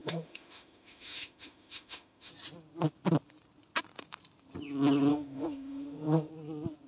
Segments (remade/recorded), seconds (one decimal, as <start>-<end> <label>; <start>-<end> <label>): 0.0-2.3 remade; 2.3-5.1 recorded; 5.1-6.3 remade; 6.3-6.9 recorded